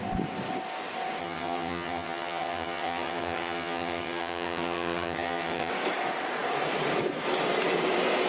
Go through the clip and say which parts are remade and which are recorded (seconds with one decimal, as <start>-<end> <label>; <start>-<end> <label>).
0.0-1.2 recorded; 1.2-5.7 remade; 5.7-8.3 recorded